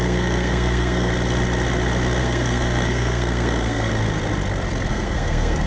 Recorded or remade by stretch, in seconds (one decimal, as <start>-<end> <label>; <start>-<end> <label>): 0.0-1.1 remade; 1.1-2.2 recorded; 2.2-3.9 remade; 3.9-4.9 recorded; 4.9-5.7 remade